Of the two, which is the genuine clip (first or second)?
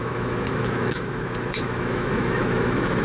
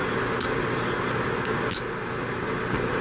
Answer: second